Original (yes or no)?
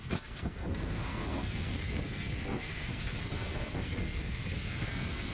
no